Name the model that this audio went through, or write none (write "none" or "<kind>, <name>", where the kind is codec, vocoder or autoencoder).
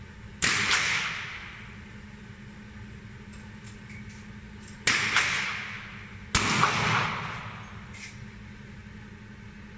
none